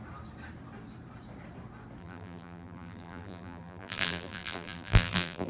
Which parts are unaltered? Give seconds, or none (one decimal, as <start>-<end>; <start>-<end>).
0.0-2.0